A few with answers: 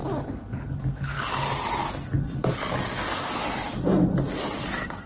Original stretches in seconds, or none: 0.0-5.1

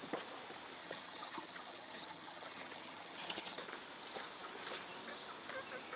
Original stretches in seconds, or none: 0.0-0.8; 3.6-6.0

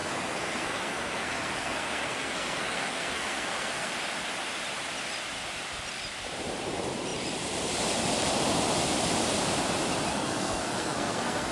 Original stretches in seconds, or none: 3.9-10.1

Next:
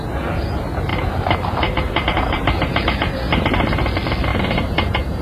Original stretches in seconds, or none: 0.0-0.9; 3.8-4.3

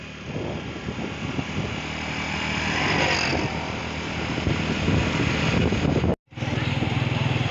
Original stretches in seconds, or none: 0.0-7.5